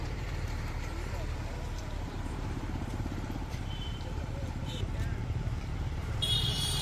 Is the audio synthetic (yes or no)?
yes